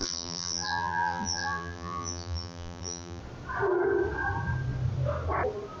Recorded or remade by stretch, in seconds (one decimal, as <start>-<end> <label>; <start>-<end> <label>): 0.0-3.2 remade; 3.2-5.8 recorded